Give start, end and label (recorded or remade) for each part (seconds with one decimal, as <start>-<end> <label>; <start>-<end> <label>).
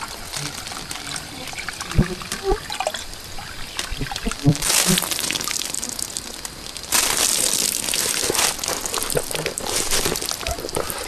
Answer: 0.0-3.9 recorded; 3.9-4.7 remade; 4.7-11.1 recorded